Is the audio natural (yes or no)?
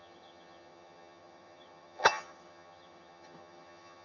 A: no